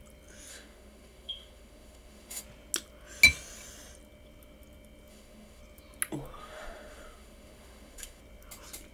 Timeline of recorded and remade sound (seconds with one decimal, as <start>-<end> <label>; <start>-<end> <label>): 0.0-0.5 recorded; 0.5-2.4 remade; 2.4-5.1 recorded; 5.1-5.6 remade; 5.6-6.4 recorded; 6.4-8.2 remade; 8.2-8.9 recorded